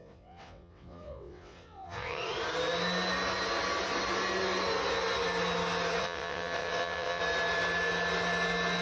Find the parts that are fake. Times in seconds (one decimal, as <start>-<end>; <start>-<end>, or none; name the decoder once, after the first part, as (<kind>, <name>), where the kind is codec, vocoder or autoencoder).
0.0-2.2 (vocoder, WaveNeXt); 6.0-7.2